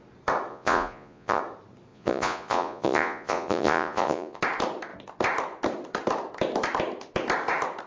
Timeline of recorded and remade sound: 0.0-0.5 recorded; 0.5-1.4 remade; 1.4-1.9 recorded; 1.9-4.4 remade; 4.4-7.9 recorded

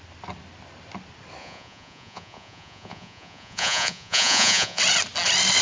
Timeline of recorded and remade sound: 0.0-1.4 recorded; 1.4-4.8 remade; 4.8-5.6 recorded

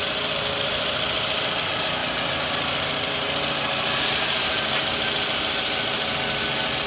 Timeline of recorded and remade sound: 0.0-6.9 recorded

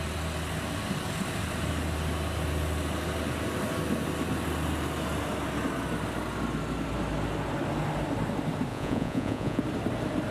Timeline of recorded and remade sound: 0.0-8.7 recorded; 8.7-9.6 remade; 9.6-10.3 recorded

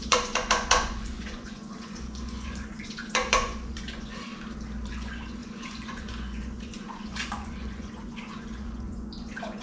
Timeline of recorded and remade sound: 0.0-4.3 remade; 4.3-4.9 recorded; 4.9-9.6 remade

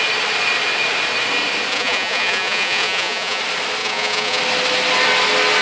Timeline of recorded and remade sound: 0.0-1.7 recorded; 1.7-3.4 remade; 3.4-3.8 recorded; 3.8-4.4 remade; 4.4-5.6 recorded

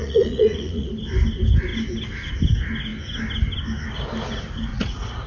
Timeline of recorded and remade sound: 0.0-0.9 remade; 0.9-4.7 recorded; 4.7-5.3 remade